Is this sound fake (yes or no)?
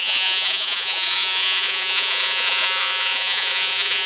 yes